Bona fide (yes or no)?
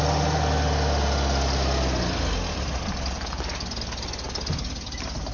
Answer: yes